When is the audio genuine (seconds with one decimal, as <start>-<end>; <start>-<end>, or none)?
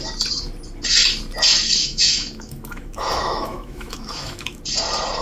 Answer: 0.0-1.8; 4.6-5.2